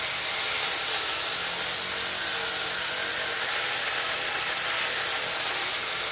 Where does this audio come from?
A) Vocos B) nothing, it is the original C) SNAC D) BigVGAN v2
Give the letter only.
B